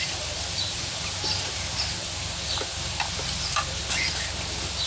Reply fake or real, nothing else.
real